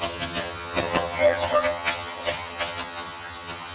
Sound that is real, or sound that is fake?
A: fake